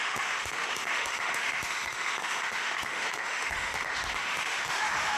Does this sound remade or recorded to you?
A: remade